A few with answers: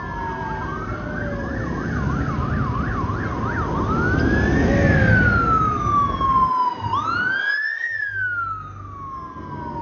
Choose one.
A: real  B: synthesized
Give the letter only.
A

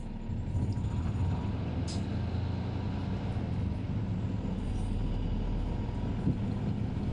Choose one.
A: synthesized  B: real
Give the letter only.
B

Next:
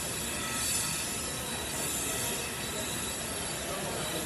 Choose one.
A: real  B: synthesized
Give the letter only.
A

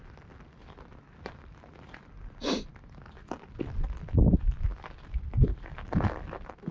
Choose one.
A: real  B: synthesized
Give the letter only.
A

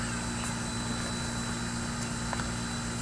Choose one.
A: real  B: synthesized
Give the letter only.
A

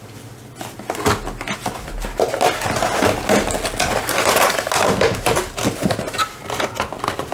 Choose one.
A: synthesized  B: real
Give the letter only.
B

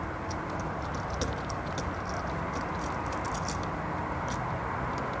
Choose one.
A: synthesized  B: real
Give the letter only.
B